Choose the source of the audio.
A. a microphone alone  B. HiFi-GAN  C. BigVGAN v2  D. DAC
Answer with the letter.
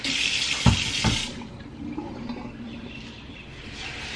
A